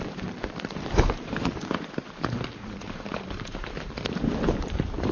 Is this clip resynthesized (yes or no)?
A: yes